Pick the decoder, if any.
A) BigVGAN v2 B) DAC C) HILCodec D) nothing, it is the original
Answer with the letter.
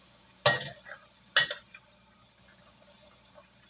D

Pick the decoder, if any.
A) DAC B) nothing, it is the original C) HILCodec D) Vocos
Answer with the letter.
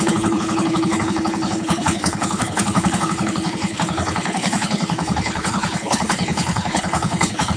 C